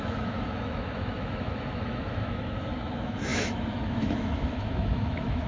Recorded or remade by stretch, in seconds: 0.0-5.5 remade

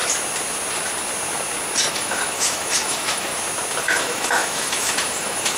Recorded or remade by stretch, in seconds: 0.0-1.9 recorded; 1.9-3.3 remade; 3.3-3.8 recorded; 3.8-5.6 remade